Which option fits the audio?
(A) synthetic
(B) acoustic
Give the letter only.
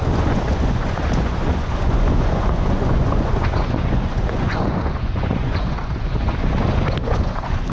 A